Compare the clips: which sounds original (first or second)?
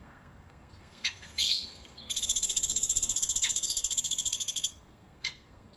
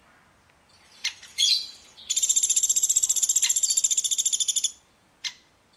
second